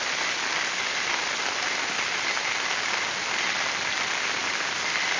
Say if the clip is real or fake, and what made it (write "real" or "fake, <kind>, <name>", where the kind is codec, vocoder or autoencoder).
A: real